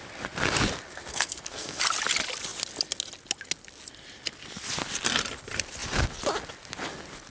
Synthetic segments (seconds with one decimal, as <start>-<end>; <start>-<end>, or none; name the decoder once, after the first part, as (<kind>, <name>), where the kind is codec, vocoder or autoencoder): 1.1-1.8 (codec, SNAC)